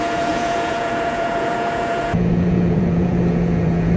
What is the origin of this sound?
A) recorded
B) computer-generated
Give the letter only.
B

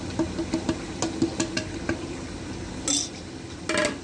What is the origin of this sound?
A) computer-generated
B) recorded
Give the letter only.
B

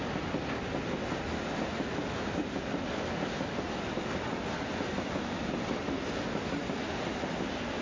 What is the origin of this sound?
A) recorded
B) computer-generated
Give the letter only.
A